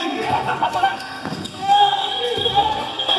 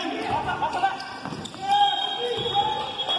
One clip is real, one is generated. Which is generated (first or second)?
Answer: first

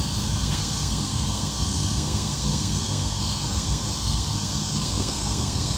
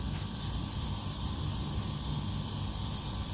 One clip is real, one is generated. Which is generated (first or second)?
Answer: first